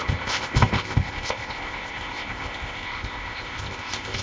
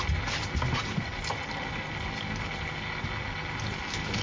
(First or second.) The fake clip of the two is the first